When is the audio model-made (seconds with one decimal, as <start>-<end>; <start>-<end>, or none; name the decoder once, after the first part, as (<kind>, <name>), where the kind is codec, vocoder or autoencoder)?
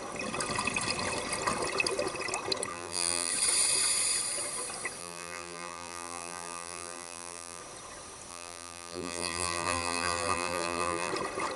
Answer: 2.7-3.3 (vocoder, BigVGAN v2); 5.0-7.6; 8.3-11.1